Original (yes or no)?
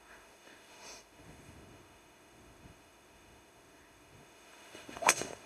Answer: no